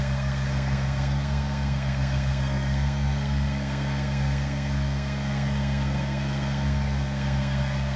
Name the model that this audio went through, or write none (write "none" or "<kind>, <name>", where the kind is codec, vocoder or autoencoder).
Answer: codec, SNAC